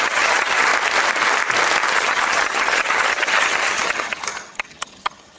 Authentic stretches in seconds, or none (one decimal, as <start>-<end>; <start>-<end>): 0.7-1.9